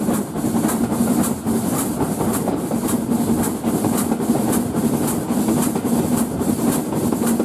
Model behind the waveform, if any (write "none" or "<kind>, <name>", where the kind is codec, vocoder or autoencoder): none